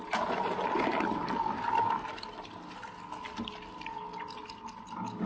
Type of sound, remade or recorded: recorded